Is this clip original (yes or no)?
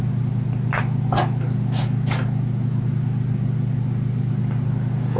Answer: yes